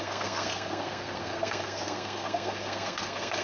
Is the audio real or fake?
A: fake